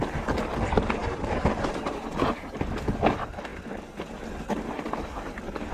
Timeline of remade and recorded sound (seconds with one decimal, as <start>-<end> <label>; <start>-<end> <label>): 0.0-5.7 recorded